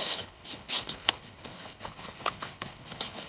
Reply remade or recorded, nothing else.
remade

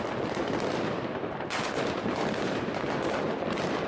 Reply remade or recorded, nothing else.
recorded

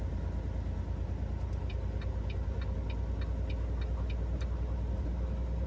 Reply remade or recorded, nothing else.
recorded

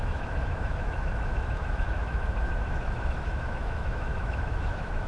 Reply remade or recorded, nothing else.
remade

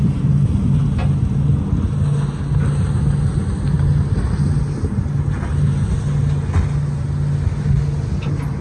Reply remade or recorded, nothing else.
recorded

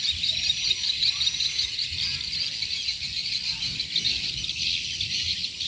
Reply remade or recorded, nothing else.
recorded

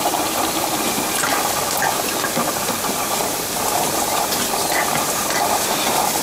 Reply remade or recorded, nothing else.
remade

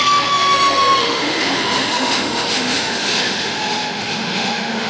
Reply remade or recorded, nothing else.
remade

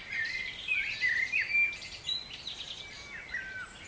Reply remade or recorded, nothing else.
recorded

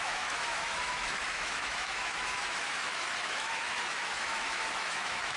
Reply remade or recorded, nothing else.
remade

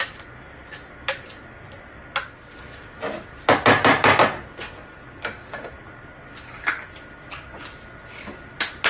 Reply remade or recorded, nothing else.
recorded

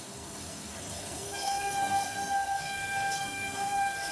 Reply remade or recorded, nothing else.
remade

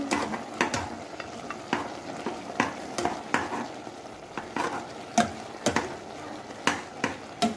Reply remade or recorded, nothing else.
recorded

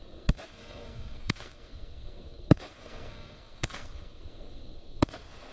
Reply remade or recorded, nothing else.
remade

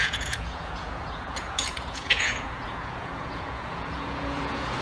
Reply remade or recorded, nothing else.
remade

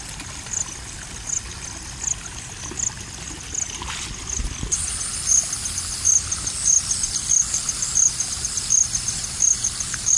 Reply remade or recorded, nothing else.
recorded